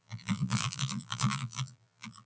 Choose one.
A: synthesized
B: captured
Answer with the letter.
A